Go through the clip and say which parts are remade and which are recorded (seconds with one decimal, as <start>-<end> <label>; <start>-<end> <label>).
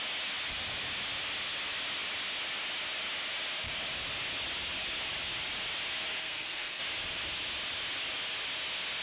0.0-6.2 recorded; 6.2-6.8 remade; 6.8-9.0 recorded